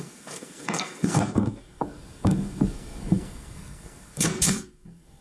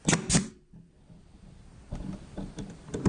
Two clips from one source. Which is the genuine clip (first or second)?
second